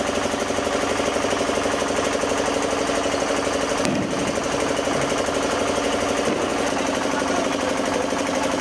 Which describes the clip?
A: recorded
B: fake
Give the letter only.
A